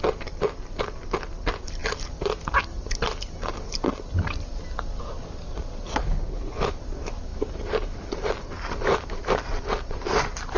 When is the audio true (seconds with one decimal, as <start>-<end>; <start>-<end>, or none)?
0.0-6.0; 6.8-10.6